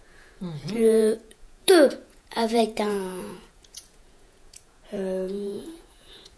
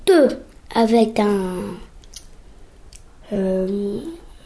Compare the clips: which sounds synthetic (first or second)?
first